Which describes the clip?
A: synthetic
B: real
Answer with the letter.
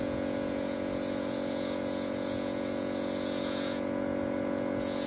A